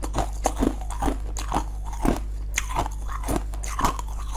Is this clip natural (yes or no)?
yes